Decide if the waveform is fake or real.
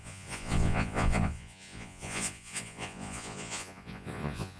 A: fake